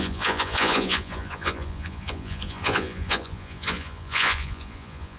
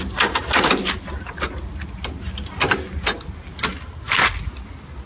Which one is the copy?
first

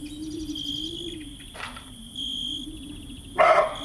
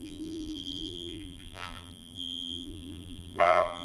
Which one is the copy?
second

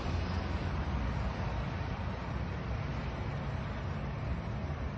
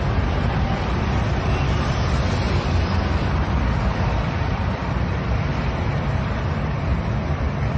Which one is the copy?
second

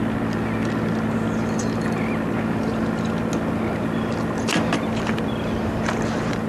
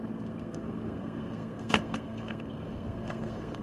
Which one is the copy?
second